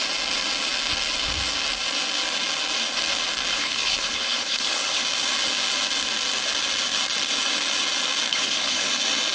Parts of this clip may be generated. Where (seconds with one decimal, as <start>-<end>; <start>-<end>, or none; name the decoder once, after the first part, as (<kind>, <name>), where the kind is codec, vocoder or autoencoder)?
3.5-5.0 (codec, HILCodec); 8.3-8.9